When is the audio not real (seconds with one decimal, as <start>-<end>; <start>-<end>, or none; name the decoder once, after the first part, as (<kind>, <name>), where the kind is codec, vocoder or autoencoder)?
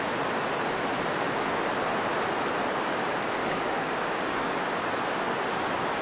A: 3.4-4.5 (codec, DAC)